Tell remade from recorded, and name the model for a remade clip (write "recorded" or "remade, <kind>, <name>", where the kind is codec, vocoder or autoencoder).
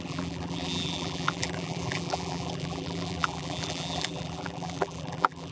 remade, vocoder, BigVGAN v2